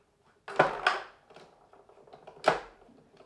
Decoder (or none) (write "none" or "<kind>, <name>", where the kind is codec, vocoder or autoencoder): none